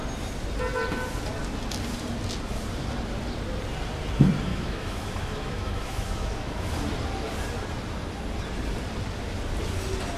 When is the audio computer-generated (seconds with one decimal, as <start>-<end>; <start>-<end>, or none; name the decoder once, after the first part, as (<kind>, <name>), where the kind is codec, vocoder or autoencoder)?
4.5-6.7 (autoencoder, DAC-VAE)

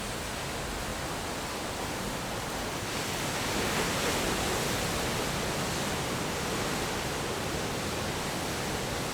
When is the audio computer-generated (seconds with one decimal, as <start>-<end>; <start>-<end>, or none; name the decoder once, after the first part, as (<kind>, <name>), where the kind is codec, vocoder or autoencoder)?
none

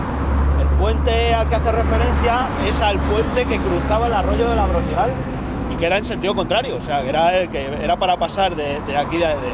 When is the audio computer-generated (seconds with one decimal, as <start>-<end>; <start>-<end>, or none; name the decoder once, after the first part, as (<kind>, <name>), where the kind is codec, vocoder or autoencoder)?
3.2-7.1 (autoencoder, DAC-VAE); 8.4-9.5

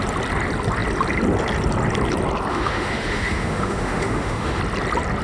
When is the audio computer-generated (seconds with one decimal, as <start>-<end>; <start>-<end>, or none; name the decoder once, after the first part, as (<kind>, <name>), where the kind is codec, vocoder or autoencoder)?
2.5-4.6 (autoencoder, DAC-VAE)